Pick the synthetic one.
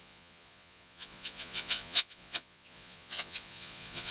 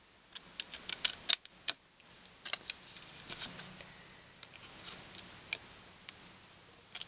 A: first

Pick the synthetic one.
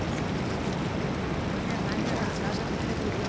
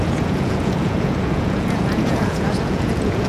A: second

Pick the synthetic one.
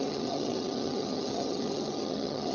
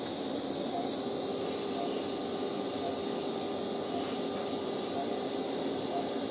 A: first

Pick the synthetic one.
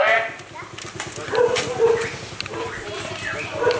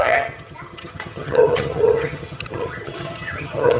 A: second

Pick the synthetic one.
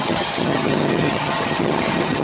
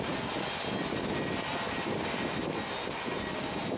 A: first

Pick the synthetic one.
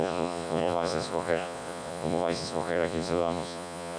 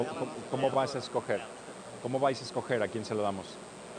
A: first